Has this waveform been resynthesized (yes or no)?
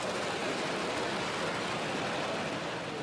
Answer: no